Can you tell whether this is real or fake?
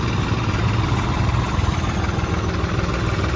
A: real